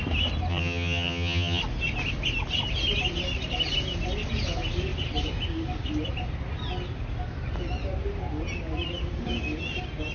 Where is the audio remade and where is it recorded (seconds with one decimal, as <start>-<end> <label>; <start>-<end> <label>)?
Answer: 0.0-0.5 recorded; 0.5-1.6 remade; 1.6-10.1 recorded